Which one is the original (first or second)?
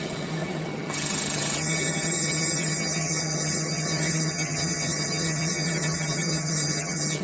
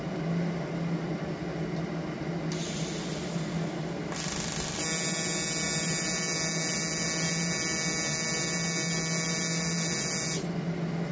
second